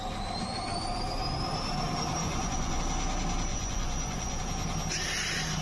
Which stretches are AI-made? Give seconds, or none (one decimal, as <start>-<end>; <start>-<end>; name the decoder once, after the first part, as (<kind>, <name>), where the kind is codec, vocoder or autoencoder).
2.2-2.8 (vocoder, Vocos); 3.5-4.4